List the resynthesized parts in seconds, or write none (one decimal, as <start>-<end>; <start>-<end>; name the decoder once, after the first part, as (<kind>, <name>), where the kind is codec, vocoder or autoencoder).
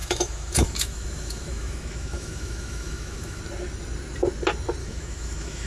0.0-3.4 (autoencoder, DAC-VAE); 4.8-5.7